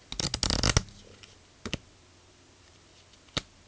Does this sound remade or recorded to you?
recorded